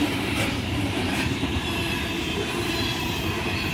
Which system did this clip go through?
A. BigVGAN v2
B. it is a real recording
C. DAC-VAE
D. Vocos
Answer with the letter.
A